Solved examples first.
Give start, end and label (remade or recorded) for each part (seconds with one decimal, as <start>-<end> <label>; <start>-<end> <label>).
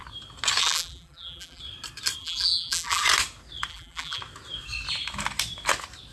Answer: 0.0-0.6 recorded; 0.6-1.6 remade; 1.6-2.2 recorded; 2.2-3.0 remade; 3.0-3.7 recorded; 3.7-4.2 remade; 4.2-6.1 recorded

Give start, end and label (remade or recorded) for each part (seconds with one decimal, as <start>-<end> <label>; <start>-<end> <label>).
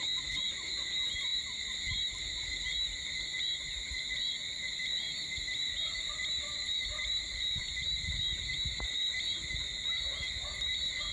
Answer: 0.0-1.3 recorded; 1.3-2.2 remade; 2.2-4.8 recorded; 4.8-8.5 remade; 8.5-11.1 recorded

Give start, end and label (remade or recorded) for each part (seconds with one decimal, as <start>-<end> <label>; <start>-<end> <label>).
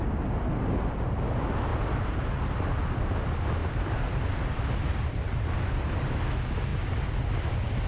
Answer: 0.0-1.7 recorded; 1.7-3.0 remade; 3.0-3.6 recorded; 3.6-5.9 remade; 5.9-7.9 recorded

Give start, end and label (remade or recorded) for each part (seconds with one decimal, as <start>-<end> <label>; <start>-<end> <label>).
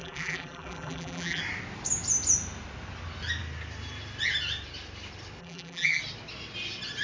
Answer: 0.0-1.4 remade; 1.4-5.4 recorded; 5.4-6.0 remade; 6.0-7.0 recorded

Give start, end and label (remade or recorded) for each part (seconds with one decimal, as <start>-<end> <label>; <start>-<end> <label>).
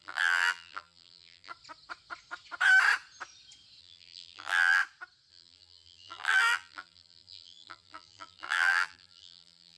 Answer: 0.0-1.5 remade; 1.5-3.8 recorded; 3.8-4.8 remade; 4.8-5.3 recorded; 5.3-9.8 remade